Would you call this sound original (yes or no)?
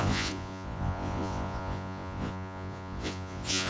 no